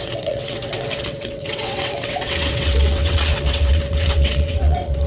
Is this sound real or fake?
fake